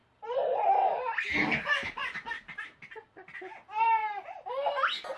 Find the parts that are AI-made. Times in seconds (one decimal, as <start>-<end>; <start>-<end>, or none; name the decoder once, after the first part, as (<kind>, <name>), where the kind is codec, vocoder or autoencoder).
0.0-3.1 (vocoder, BigVGAN v2); 4.0-4.5